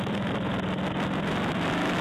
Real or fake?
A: real